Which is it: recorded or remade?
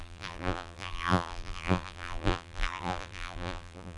remade